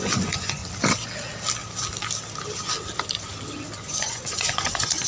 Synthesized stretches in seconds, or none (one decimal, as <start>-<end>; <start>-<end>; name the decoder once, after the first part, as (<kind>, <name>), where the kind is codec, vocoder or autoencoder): 0.0-0.6 (vocoder, Vocos); 3.7-5.1